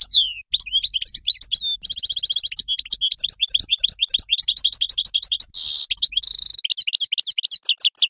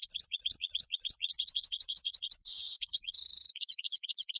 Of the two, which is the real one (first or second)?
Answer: first